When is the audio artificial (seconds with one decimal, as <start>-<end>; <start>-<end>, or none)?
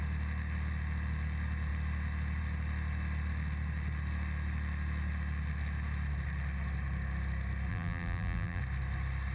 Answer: 7.7-8.6